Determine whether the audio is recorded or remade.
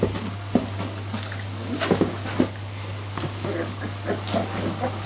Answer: remade